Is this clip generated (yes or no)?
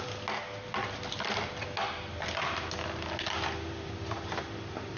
no